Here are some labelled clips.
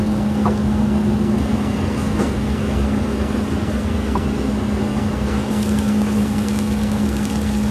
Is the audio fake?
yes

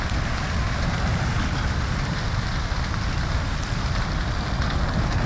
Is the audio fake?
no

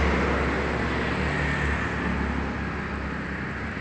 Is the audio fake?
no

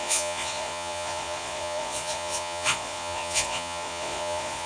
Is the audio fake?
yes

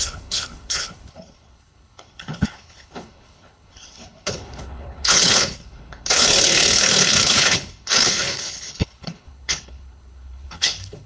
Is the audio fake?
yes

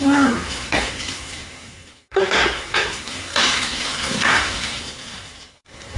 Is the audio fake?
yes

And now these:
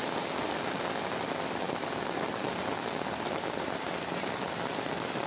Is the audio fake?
no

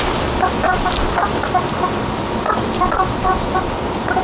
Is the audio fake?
no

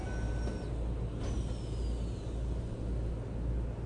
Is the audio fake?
no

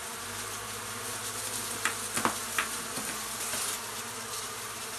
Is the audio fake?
no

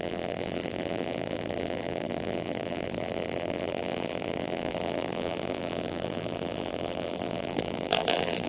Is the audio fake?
yes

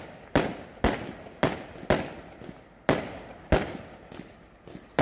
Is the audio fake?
no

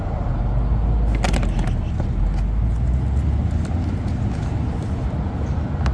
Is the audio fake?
no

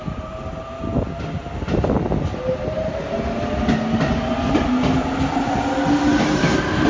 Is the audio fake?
no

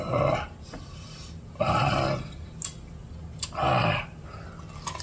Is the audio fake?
no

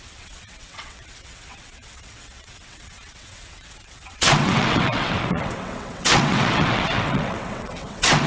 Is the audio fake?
yes